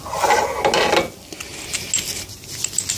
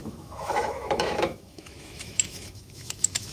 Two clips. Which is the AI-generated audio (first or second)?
second